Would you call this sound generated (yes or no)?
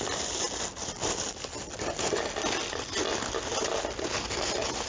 no